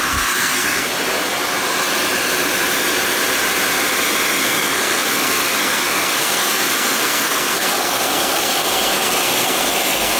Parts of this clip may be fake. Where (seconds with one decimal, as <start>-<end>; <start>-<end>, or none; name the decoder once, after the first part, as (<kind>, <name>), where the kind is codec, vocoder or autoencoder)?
0.0-0.9 (codec, SNAC); 4.4-10.2